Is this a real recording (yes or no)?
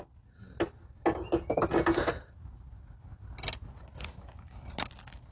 yes